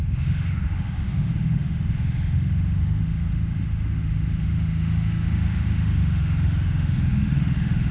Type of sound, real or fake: fake